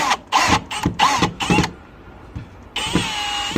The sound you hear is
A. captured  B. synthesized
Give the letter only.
A